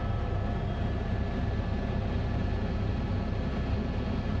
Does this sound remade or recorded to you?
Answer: recorded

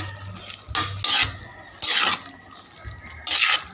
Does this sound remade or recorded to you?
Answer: recorded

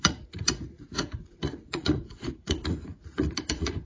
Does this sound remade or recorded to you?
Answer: remade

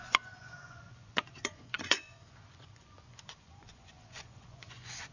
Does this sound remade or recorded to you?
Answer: remade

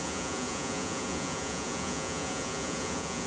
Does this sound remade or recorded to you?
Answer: remade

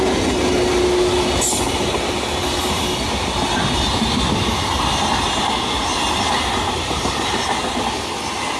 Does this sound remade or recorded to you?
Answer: recorded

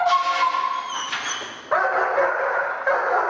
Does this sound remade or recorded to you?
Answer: recorded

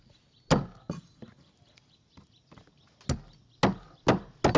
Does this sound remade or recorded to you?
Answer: recorded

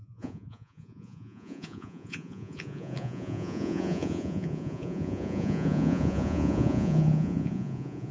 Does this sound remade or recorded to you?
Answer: remade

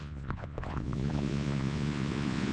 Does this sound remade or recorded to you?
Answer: remade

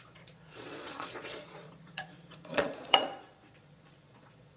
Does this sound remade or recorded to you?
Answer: remade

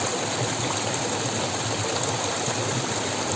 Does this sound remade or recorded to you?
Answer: recorded